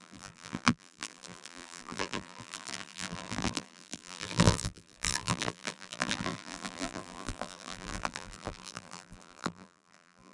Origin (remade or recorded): remade